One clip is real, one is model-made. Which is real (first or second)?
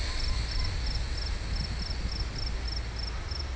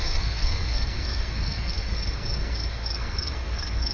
first